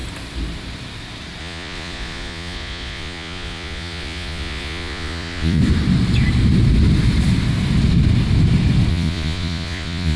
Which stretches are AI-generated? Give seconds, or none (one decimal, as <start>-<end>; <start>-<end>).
1.4-5.6; 8.9-10.2